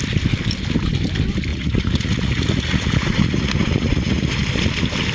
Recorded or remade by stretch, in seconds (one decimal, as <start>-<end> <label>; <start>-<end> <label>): 0.0-1.5 recorded; 1.5-4.3 remade; 4.3-5.1 recorded